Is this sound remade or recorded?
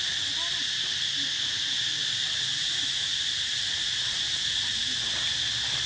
recorded